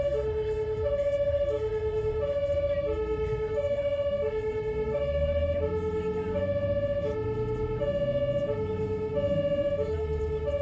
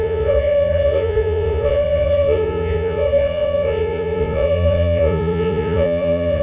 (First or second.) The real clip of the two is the first